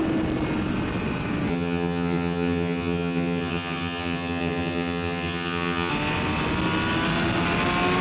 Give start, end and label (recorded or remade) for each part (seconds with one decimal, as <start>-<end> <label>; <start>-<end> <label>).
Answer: 0.0-1.5 recorded; 1.5-5.9 remade; 5.9-8.0 recorded